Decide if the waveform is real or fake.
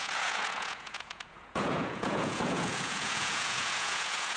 fake